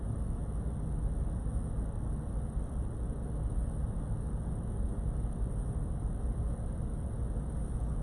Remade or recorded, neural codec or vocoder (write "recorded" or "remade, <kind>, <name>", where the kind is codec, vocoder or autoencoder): recorded